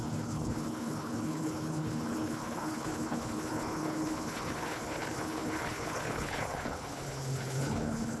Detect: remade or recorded remade